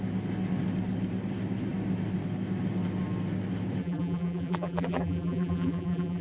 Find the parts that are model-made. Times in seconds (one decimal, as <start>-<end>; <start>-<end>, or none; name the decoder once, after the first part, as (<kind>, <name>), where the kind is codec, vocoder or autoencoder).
3.8-6.2 (vocoder, BigVGAN v2)